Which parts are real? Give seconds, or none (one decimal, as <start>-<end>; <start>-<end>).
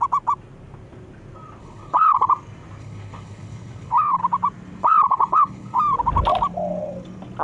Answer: 0.0-1.6; 2.3-2.8; 4.2-4.8; 5.8-7.4